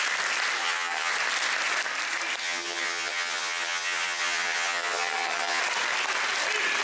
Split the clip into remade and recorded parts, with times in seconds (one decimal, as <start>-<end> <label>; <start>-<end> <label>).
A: 0.0-0.6 recorded; 0.6-1.1 remade; 1.1-2.4 recorded; 2.4-5.6 remade; 5.6-6.8 recorded